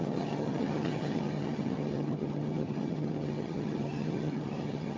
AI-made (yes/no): yes